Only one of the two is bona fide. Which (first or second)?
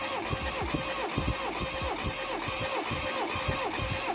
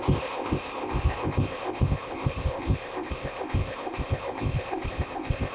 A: first